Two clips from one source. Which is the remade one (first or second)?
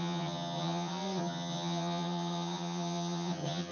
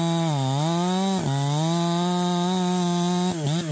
first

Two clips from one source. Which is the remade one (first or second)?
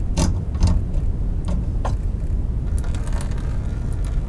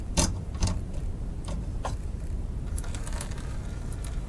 second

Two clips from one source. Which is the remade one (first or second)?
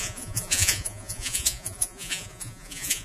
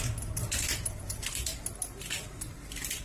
first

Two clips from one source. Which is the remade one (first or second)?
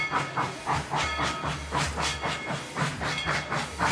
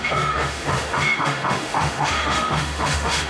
second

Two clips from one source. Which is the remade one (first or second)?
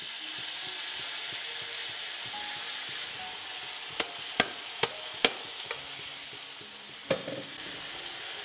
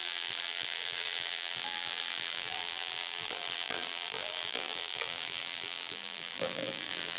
second